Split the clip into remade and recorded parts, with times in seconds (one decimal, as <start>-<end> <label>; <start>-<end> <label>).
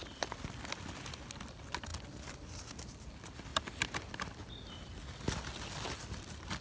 0.0-6.6 recorded